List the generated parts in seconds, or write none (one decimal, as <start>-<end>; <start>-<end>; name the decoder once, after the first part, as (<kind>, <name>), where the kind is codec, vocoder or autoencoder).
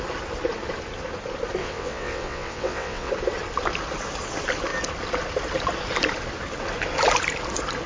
1.6-3.1 (vocoder, WaveNeXt)